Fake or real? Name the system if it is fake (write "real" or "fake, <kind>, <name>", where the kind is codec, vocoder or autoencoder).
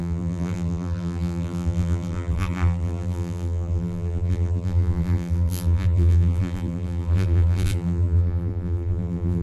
fake, vocoder, BigVGAN v2